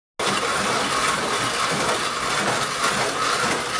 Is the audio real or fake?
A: real